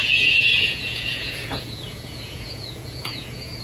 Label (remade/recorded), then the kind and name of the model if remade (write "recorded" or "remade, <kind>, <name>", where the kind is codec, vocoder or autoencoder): remade, vocoder, Vocos